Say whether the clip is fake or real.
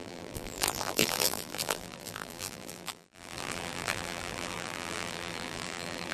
fake